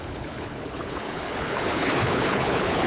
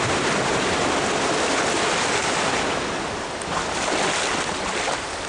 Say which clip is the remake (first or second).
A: first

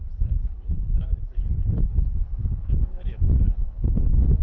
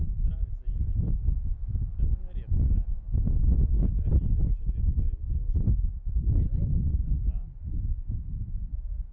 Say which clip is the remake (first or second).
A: first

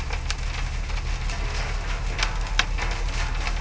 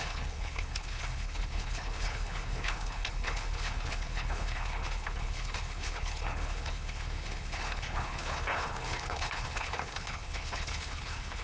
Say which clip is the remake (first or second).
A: second